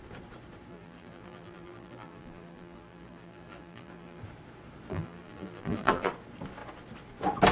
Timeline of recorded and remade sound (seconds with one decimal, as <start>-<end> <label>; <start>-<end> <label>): 0.0-0.7 recorded; 0.7-4.2 remade; 4.2-4.9 recorded; 4.9-6.1 remade; 6.1-7.5 recorded